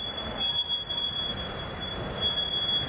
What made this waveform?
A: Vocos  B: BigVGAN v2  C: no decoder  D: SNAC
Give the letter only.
C